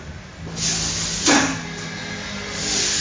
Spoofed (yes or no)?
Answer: no